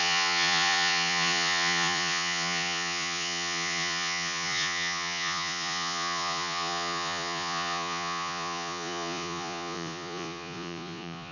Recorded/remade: remade